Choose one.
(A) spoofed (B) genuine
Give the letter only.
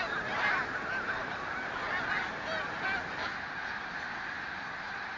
B